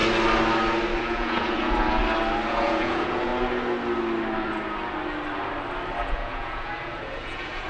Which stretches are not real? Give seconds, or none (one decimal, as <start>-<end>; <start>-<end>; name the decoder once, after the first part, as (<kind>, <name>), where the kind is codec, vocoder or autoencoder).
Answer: 1.0-2.0 (vocoder, Vocos); 2.5-3.3; 6.0-7.7